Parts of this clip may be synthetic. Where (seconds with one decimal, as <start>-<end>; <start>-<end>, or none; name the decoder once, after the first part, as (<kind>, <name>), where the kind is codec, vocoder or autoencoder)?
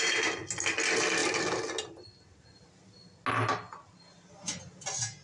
none